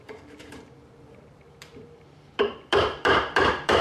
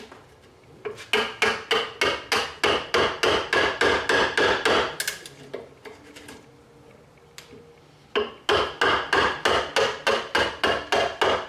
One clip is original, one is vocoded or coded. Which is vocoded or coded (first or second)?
first